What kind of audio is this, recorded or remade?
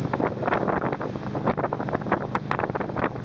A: recorded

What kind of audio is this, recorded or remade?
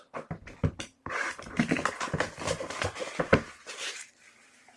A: remade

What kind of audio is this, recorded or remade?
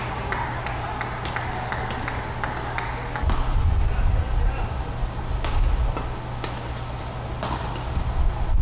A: recorded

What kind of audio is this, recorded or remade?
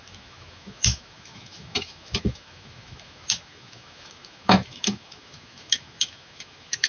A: remade